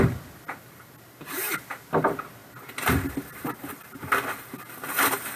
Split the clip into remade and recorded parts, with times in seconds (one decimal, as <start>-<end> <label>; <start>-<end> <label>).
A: 0.0-5.4 recorded